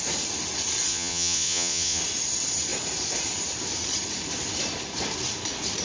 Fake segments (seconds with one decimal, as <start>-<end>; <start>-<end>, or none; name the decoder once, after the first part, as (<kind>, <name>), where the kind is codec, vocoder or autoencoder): 0.9-2.0 (vocoder, Vocos)